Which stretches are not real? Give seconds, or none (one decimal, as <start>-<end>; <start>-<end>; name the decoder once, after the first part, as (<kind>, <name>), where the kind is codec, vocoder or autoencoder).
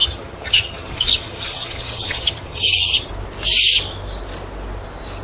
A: 0.0-3.1 (vocoder, HiFi-GAN)